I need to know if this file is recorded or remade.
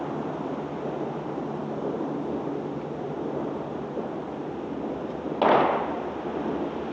recorded